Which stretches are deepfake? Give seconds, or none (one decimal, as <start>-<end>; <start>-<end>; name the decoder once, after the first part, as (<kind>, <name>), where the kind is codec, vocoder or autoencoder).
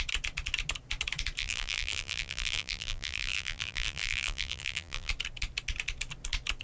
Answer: 1.4-5.1 (vocoder, BigVGAN v2)